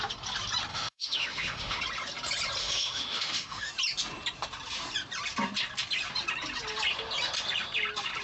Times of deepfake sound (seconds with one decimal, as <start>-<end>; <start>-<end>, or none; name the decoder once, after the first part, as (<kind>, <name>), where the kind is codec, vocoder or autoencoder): 0.7-1.8 (autoencoder, DAC-VAE); 2.6-3.7